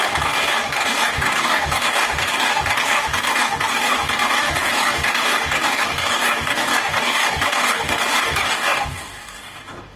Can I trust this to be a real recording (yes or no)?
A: no